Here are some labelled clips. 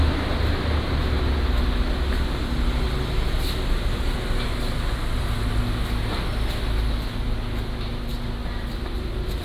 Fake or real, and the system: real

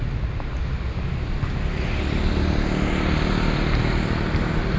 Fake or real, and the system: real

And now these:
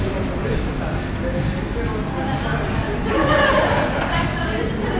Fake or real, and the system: real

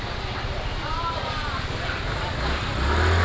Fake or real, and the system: real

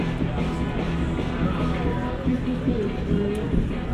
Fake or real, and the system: real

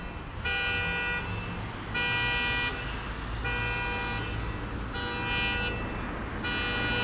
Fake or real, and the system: real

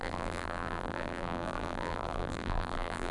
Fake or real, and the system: fake, vocoder, BigVGAN v2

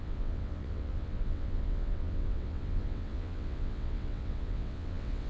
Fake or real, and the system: fake, vocoder, WaveNeXt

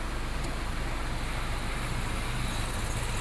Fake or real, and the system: real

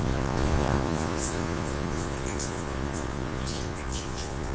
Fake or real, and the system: fake, vocoder, Vocos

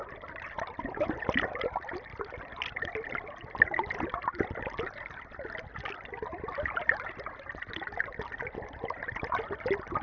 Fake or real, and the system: real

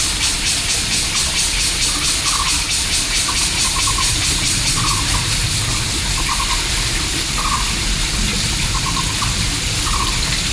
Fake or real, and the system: real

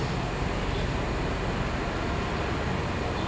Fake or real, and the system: real